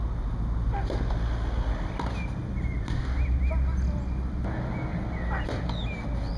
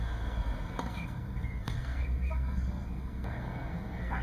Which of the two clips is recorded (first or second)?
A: first